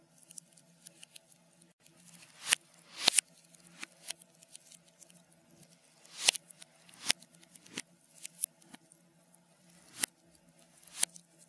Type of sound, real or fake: real